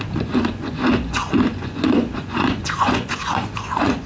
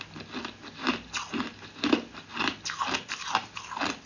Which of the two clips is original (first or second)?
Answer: second